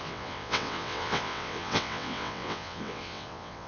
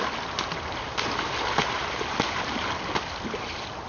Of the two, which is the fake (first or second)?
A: first